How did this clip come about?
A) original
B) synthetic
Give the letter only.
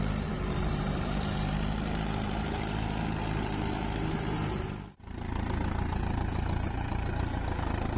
B